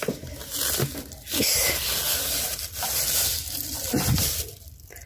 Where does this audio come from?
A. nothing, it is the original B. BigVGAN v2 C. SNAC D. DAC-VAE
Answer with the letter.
A